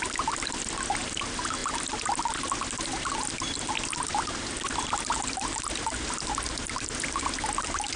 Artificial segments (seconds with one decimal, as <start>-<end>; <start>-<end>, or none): none